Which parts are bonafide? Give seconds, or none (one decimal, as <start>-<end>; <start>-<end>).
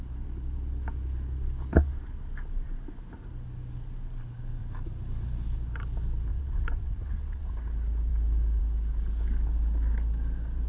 0.0-6.3; 7.5-10.7